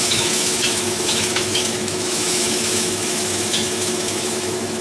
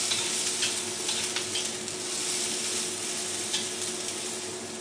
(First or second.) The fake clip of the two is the first